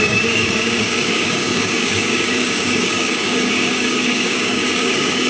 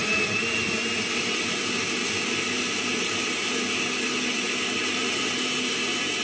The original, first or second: second